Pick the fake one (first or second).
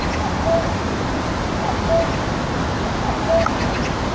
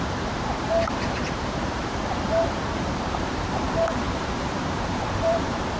second